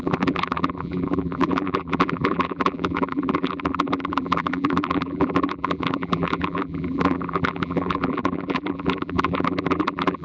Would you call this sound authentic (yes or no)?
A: no